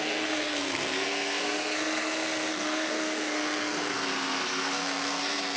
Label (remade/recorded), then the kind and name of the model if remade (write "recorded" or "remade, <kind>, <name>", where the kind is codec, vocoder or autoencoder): remade, codec, SNAC